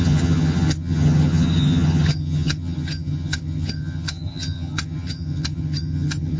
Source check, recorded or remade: remade